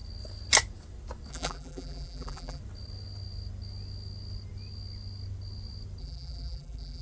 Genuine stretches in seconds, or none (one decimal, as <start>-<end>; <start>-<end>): 0.0-1.3; 2.6-6.0